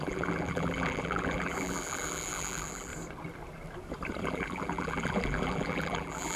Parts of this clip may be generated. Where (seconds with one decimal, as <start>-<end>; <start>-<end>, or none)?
0.0-2.9; 4.2-6.4